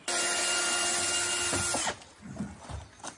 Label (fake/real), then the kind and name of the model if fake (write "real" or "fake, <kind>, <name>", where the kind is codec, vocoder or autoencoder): real